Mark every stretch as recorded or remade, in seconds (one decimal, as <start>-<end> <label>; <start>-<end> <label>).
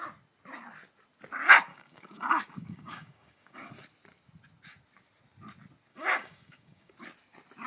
0.0-1.7 recorded; 1.7-3.7 remade; 3.7-5.9 recorded; 5.9-6.9 remade; 6.9-7.7 recorded